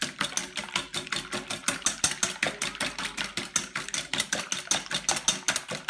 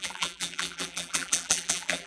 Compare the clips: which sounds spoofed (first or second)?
second